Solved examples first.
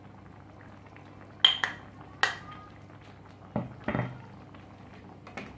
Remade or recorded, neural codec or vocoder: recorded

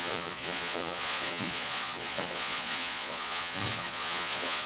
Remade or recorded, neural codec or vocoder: remade, vocoder, Vocos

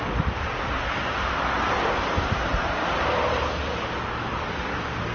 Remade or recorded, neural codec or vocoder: recorded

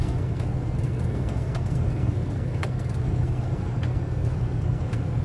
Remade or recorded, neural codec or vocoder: remade, codec, SNAC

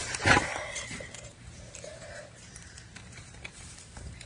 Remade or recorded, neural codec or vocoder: remade, vocoder, BigVGAN v2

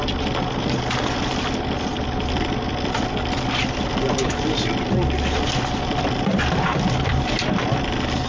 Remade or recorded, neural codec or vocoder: recorded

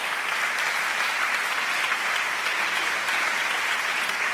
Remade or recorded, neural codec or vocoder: recorded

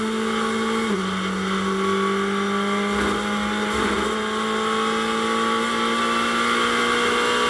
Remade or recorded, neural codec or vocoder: recorded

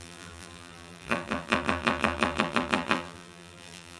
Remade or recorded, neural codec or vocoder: remade, vocoder, BigVGAN v2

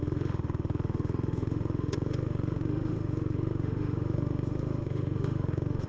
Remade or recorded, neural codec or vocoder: remade, autoencoder, DAC-VAE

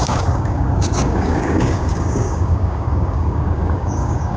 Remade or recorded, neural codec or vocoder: remade, codec, DAC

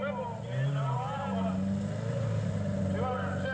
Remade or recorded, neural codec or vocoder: recorded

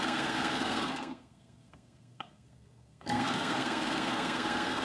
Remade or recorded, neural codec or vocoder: remade, codec, SNAC